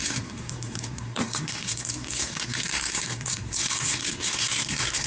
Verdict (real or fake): fake